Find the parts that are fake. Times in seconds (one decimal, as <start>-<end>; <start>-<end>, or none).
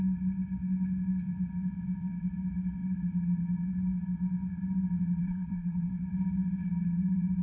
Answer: 5.2-6.1